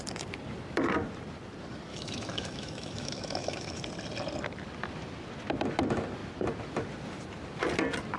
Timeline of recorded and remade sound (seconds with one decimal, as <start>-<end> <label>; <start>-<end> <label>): 0.0-1.9 recorded; 1.9-3.8 remade; 3.8-8.2 recorded